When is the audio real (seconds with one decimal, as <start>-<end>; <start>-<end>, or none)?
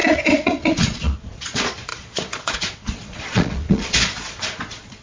none